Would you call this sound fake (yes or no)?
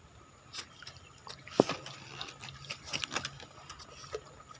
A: no